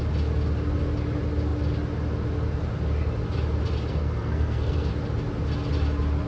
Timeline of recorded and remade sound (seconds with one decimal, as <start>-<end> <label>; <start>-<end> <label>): 0.0-3.9 recorded; 3.9-4.9 remade; 4.9-6.3 recorded